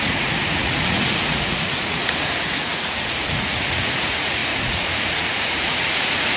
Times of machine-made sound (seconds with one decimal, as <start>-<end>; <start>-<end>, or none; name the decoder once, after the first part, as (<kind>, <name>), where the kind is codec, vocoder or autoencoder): 0.0-6.4 (vocoder, Vocos)